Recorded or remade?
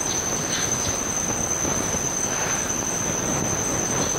recorded